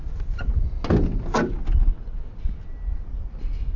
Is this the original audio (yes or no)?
yes